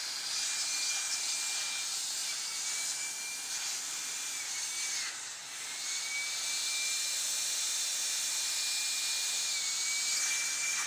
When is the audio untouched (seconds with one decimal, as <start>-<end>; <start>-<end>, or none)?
0.0-10.9